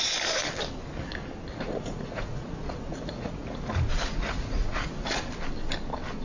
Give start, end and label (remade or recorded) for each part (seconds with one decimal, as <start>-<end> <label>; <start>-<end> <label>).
0.0-1.5 recorded; 1.5-5.2 remade; 5.2-6.2 recorded